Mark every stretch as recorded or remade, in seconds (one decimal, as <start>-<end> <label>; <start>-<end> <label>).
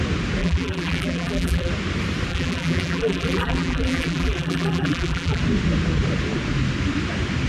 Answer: 0.0-0.4 recorded; 0.4-1.7 remade; 1.7-2.3 recorded; 2.3-5.4 remade; 5.4-7.5 recorded